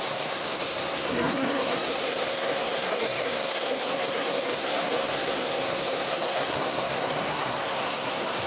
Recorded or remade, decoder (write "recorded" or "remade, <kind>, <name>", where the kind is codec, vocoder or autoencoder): remade, codec, SNAC